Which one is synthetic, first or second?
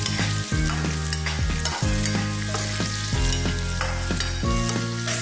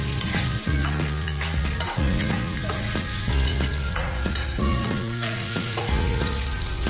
second